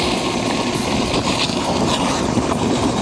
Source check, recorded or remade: remade